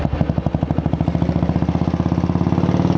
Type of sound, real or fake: real